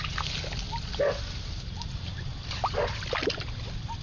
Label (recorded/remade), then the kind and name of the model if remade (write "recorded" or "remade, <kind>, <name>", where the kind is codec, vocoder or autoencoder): recorded